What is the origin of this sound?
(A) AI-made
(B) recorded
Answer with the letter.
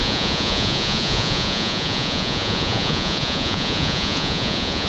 A